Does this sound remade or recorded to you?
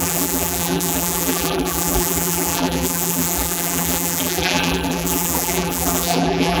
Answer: remade